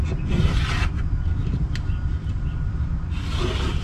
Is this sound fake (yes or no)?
no